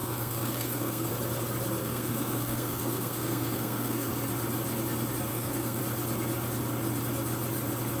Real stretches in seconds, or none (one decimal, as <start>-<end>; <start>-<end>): 1.1-1.8; 4.1-5.3; 5.8-8.0